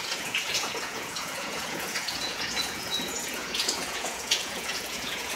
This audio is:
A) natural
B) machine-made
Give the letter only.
B